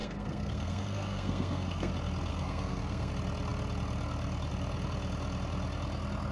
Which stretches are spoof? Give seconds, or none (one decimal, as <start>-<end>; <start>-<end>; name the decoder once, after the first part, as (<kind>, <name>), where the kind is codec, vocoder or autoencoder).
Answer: 0.0-1.9 (codec, SNAC); 2.3-3.1